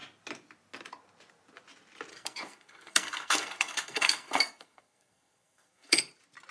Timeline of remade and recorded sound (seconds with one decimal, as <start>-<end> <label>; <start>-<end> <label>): 0.0-2.1 recorded; 2.1-6.0 remade; 6.0-6.5 recorded

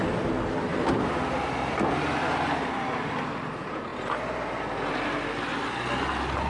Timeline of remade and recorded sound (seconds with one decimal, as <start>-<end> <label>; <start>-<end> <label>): 0.0-6.5 recorded

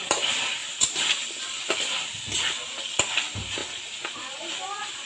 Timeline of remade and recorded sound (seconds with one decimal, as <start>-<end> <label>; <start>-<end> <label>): 0.0-5.1 recorded

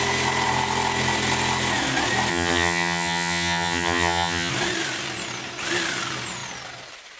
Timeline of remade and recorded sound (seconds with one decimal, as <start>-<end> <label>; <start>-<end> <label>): 0.0-2.3 recorded; 2.3-4.5 remade; 4.5-7.2 recorded

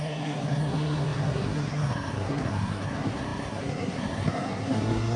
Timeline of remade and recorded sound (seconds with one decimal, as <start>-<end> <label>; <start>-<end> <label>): 0.0-5.2 remade

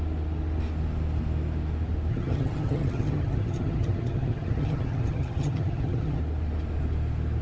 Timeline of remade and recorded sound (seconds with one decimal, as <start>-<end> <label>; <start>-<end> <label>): 0.0-2.1 recorded; 2.1-6.2 remade; 6.2-7.4 recorded

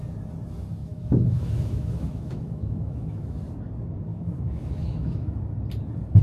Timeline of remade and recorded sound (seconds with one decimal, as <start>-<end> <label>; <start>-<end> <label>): 0.0-0.8 recorded; 0.8-3.4 remade; 3.4-4.1 recorded; 4.1-5.4 remade; 5.4-6.2 recorded

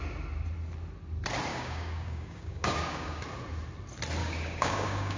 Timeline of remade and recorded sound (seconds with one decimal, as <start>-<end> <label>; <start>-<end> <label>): 0.0-1.5 recorded; 1.5-3.2 remade; 3.2-4.2 recorded; 4.2-5.2 remade